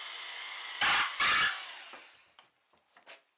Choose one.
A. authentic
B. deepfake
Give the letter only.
A